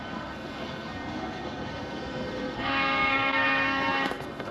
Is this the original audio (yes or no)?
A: no